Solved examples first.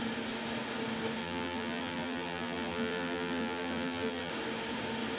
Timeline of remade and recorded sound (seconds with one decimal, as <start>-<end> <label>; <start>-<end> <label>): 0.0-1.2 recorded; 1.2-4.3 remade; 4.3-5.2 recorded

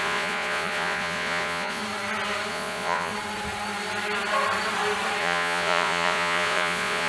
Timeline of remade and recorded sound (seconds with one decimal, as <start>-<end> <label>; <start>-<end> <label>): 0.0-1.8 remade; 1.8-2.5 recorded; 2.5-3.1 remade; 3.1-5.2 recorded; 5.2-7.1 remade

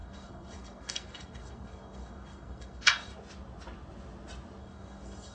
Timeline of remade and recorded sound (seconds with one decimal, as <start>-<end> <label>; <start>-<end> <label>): 0.0-3.1 remade; 3.1-4.6 recorded; 4.6-5.3 remade

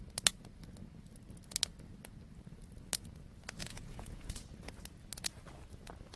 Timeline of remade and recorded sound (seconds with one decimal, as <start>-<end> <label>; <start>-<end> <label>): 0.0-3.6 recorded; 3.6-4.3 remade; 4.3-6.2 recorded